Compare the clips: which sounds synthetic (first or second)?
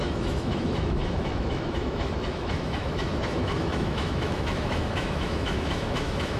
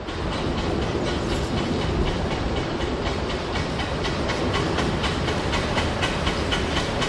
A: first